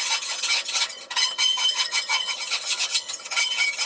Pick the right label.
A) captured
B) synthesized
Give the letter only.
B